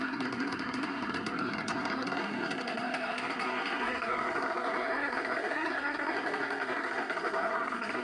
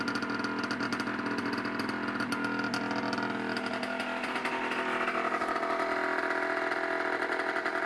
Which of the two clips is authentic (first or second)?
second